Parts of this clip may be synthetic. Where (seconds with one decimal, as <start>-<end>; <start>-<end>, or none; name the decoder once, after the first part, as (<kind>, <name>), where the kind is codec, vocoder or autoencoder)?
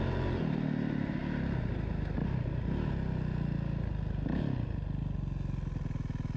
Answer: none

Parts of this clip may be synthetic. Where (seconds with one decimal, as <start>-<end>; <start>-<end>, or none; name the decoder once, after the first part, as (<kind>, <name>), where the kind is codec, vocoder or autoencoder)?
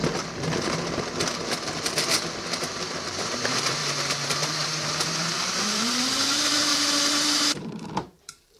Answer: 2.4-6.7 (vocoder, BigVGAN v2); 7.4-8.6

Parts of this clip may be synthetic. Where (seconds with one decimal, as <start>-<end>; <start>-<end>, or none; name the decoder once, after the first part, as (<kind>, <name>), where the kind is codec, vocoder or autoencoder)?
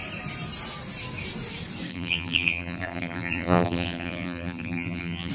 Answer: 1.9-5.3 (vocoder, BigVGAN v2)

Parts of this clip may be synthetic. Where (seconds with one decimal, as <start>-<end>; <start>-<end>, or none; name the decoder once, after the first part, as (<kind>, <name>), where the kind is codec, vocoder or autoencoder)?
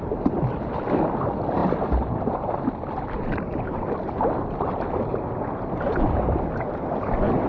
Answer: none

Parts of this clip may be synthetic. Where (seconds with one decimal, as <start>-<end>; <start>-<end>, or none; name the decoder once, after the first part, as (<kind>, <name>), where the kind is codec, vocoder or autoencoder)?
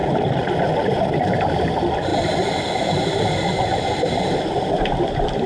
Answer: 0.0-0.6 (vocoder, BigVGAN v2); 2.1-5.5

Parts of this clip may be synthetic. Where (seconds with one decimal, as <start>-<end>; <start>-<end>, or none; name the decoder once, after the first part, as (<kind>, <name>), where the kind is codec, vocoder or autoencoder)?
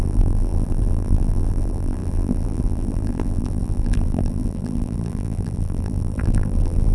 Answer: 0.0-6.9 (vocoder, BigVGAN v2)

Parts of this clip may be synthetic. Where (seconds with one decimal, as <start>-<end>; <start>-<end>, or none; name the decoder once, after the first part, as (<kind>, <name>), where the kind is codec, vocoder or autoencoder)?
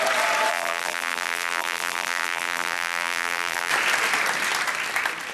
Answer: 0.5-3.7 (vocoder, BigVGAN v2)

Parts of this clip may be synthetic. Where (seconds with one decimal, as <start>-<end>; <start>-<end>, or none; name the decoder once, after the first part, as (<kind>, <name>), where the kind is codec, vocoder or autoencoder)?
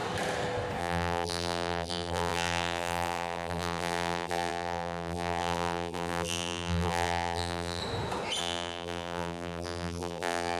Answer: 0.8-7.8 (vocoder, BigVGAN v2); 8.4-10.6